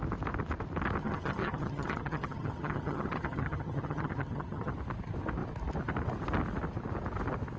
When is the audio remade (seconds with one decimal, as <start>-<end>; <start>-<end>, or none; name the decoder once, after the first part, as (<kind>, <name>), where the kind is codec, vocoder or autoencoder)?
1.0-4.7 (vocoder, HiFi-GAN)